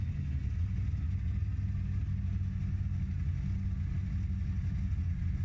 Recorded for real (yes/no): yes